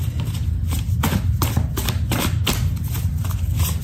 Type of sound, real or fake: real